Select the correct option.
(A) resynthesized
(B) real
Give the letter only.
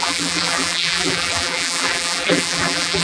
A